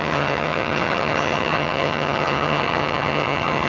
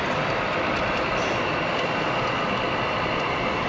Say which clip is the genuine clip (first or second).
second